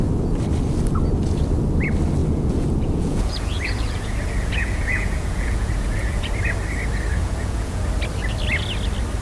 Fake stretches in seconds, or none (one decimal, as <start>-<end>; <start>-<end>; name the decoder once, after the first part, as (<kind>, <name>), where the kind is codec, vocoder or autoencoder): 2.2-6.3 (vocoder, Vocos); 7.1-7.9